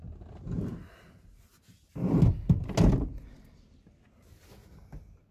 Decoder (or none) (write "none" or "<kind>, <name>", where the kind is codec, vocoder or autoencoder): none